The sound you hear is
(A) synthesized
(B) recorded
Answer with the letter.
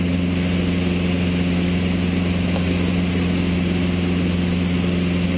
B